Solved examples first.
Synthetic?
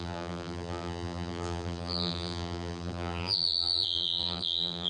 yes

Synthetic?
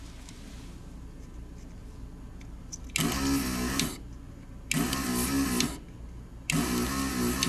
no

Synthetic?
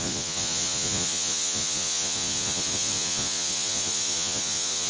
yes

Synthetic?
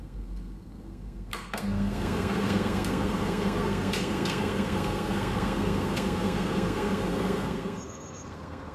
yes